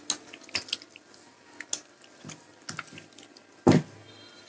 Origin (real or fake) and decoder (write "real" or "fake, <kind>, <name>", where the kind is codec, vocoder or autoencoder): real